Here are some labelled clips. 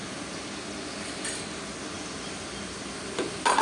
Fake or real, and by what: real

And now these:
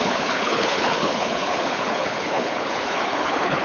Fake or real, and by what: fake, codec, HILCodec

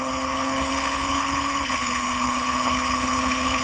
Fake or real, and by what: fake, codec, HILCodec